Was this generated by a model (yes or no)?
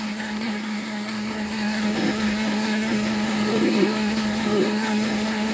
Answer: yes